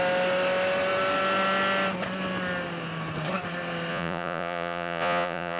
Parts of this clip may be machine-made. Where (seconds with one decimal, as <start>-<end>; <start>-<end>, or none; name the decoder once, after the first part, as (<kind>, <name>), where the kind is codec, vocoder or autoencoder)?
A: 3.9-5.6 (vocoder, Vocos)